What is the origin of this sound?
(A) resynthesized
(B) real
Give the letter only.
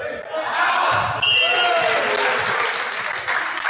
B